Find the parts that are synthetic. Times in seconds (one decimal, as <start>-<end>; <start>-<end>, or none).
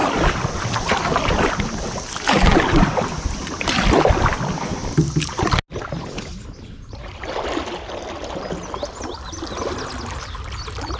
none